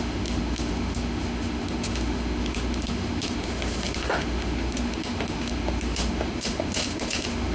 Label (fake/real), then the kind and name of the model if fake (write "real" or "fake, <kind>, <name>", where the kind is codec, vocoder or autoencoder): fake, autoencoder, DAC-VAE